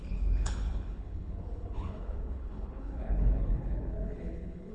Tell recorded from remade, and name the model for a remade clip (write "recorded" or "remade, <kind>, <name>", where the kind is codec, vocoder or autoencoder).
remade, codec, HILCodec